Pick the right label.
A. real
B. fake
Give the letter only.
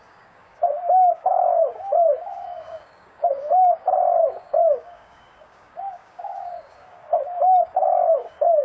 B